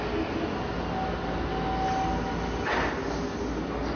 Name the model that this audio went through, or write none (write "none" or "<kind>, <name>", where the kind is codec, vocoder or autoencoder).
none